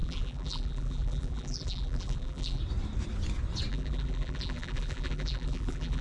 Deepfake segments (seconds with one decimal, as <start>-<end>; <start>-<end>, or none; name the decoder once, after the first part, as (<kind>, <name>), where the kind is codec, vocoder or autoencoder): 0.0-2.6 (vocoder, BigVGAN v2); 3.7-6.0

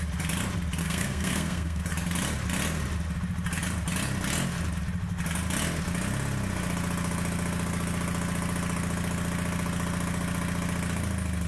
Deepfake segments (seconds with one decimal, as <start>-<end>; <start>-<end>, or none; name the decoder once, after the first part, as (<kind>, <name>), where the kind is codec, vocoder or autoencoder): 0.8-1.8 (codec, SNAC)